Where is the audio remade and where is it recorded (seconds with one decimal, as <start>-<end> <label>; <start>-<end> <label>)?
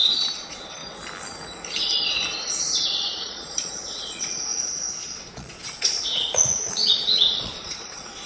0.0-0.8 remade; 0.8-2.6 recorded; 2.6-8.3 remade